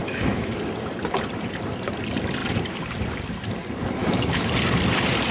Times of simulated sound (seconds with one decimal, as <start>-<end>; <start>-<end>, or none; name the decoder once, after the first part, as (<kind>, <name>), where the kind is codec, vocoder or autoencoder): 0.0-0.6 (autoencoder, DAC-VAE); 4.0-4.5